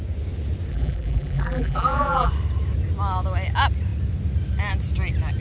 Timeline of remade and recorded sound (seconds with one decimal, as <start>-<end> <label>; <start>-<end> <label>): 0.0-0.7 recorded; 0.7-2.3 remade; 2.3-5.4 recorded